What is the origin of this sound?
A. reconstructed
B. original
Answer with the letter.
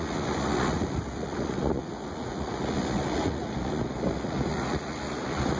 A